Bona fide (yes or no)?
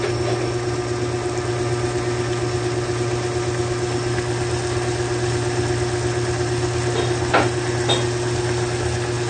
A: yes